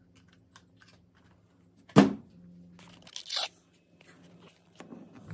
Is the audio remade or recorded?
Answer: recorded